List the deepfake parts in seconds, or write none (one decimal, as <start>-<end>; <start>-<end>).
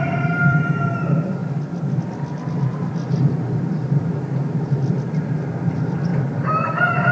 0.0-6.1